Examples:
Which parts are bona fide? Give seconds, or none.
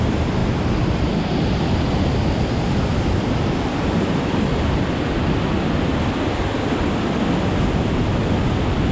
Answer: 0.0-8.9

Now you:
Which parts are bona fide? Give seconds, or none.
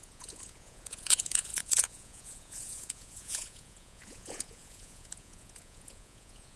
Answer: none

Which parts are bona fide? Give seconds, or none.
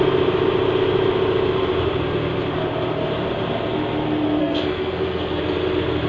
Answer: 0.0-4.4; 5.4-6.1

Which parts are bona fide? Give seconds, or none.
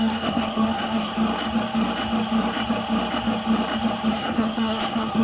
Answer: 1.1-4.1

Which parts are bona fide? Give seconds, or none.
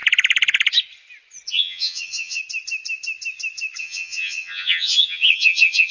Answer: 0.0-1.5; 2.4-3.8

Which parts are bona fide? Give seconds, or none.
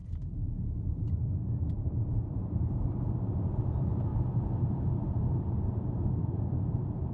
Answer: 4.1-4.7